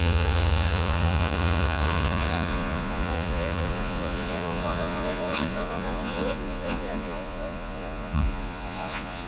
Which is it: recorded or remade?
remade